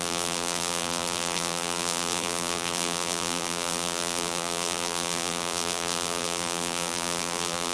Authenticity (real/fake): fake